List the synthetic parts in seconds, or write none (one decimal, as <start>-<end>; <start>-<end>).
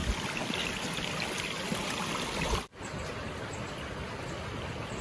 none